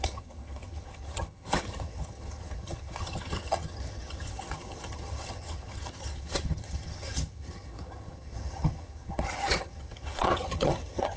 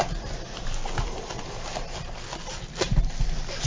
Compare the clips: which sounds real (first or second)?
second